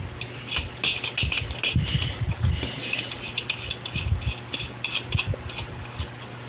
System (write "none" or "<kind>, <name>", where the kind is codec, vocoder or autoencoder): none